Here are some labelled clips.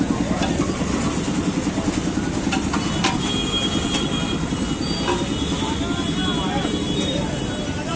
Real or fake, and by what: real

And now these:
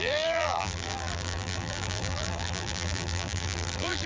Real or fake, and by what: fake, vocoder, BigVGAN v2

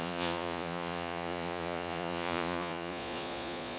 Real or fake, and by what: fake, vocoder, Vocos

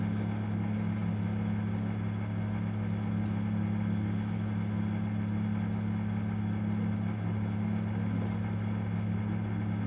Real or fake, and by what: real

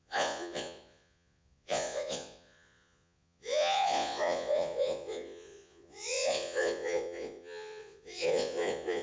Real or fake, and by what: fake, vocoder, Vocos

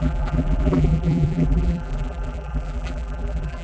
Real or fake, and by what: fake, vocoder, BigVGAN v2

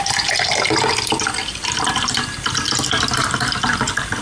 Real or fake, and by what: real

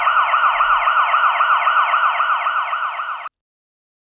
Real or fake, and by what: real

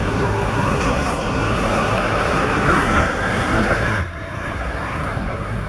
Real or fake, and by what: fake, codec, SNAC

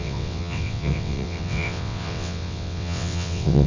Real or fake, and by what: fake, vocoder, WaveNeXt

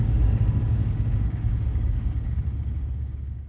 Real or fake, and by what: fake, codec, DAC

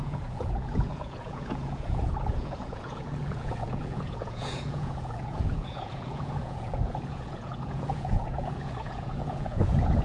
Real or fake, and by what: fake, vocoder, Vocos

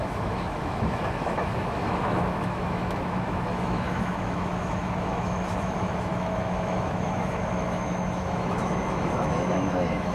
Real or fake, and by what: fake, autoencoder, DAC-VAE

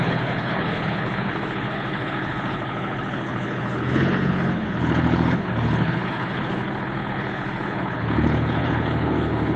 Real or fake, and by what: fake, codec, HILCodec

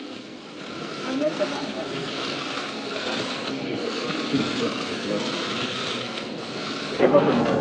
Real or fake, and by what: fake, codec, SNAC